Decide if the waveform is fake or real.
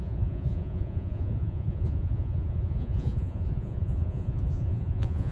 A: fake